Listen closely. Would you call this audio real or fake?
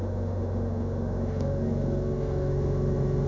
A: fake